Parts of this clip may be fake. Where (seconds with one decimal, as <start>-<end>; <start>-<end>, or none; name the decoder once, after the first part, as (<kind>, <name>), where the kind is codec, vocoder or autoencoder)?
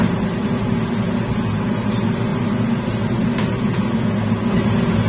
none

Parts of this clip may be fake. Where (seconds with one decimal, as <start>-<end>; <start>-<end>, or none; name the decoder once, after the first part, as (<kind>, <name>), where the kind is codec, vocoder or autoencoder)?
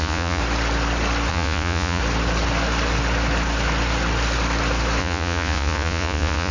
0.0-0.4 (vocoder, Vocos); 1.3-2.0; 5.0-6.5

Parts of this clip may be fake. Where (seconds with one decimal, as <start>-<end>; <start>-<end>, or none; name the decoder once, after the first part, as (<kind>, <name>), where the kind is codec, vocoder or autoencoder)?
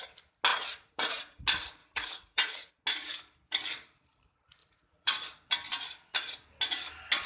0.5-1.4 (vocoder, Vocos); 1.8-2.7; 4.6-5.2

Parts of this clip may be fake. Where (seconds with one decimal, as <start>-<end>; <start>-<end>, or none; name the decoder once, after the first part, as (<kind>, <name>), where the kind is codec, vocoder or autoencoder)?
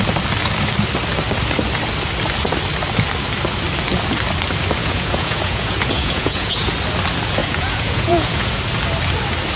4.8-6.7 (vocoder, Vocos); 7.4-8.6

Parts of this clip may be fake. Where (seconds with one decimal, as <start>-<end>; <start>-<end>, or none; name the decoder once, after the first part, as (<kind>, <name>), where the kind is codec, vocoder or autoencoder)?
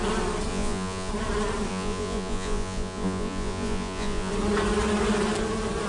0.5-1.1 (vocoder, Vocos); 1.7-4.3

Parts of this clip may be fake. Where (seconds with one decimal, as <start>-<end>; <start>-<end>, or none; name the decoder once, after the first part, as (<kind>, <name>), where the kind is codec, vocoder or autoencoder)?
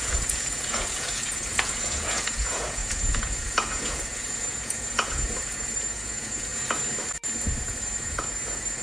0.0-6.5 (vocoder, Vocos); 7.6-8.8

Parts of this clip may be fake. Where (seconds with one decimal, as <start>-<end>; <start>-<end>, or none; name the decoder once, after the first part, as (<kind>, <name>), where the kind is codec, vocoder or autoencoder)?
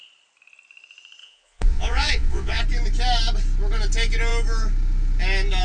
1.2-2.6 (vocoder, Vocos)